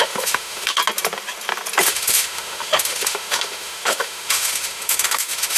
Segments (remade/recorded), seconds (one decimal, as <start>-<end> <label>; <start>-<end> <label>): 0.0-0.8 remade; 0.8-1.8 recorded; 1.8-5.6 remade